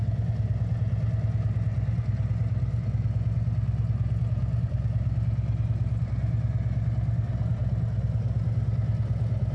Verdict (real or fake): real